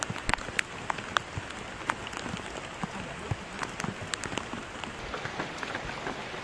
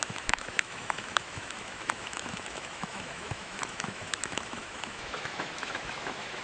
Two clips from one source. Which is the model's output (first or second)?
second